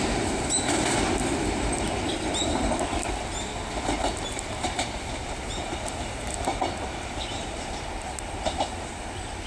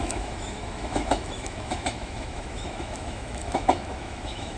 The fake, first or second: second